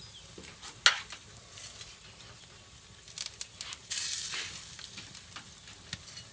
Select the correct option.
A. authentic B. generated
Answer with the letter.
A